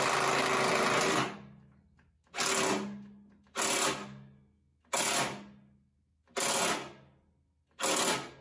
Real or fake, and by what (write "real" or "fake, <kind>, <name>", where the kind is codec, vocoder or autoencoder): real